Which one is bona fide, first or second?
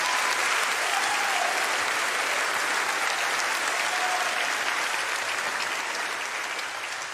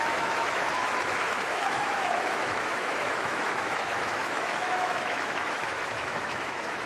first